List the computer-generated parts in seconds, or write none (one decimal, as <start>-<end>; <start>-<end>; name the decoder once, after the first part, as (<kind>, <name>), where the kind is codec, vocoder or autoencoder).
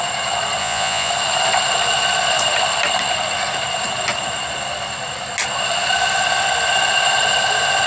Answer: 0.6-1.1 (vocoder, Vocos)